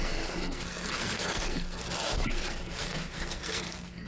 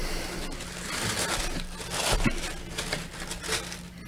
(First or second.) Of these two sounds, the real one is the second